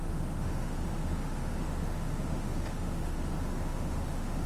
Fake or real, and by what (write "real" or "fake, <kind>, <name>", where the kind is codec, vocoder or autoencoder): fake, autoencoder, DAC-VAE